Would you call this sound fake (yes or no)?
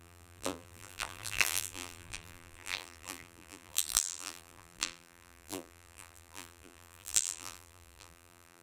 yes